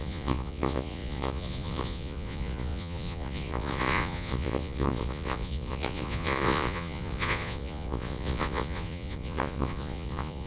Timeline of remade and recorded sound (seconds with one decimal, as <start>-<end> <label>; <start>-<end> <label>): 0.0-10.5 remade